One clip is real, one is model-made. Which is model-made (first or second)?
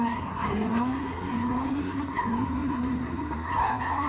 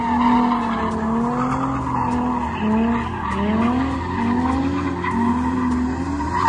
first